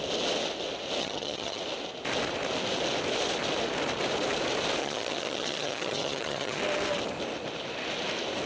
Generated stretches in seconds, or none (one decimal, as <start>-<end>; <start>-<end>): 1.0-1.6; 4.8-6.6

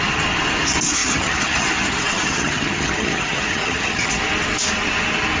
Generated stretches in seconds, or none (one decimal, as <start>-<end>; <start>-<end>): 1.0-4.2

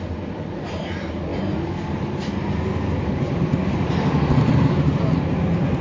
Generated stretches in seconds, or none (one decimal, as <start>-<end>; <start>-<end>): none

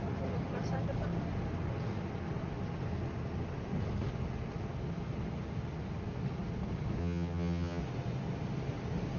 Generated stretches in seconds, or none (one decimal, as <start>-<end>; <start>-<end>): 7.0-7.8

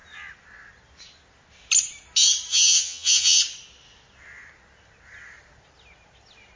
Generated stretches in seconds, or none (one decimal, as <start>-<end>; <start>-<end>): 2.5-3.4

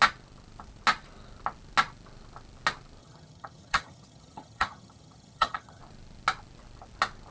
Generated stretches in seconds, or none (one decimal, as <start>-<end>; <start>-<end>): 3.0-5.8

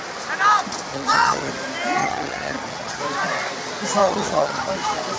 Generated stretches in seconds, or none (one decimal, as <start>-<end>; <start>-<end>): 0.9-1.5; 2.0-3.0; 4.0-4.7